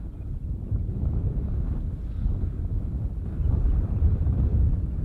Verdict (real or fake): real